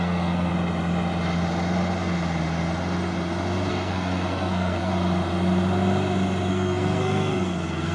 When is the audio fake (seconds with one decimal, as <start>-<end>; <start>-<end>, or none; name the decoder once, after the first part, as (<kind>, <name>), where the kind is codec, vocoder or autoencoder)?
0.0-0.5 (codec, SNAC); 3.7-4.9; 6.5-7.9